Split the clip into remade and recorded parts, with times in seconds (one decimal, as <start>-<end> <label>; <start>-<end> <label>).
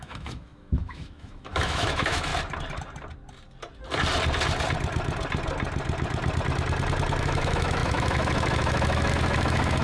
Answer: 0.0-2.3 remade; 2.3-7.2 recorded; 7.2-9.8 remade